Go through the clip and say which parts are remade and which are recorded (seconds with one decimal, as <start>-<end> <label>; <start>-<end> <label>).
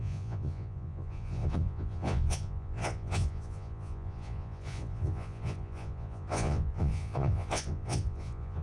0.0-8.6 remade